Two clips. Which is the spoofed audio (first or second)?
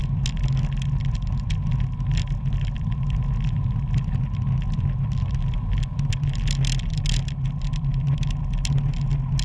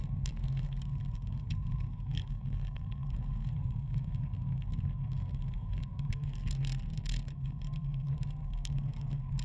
second